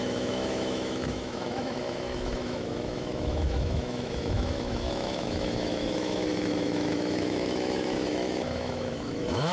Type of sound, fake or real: fake